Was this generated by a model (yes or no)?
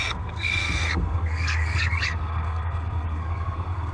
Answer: yes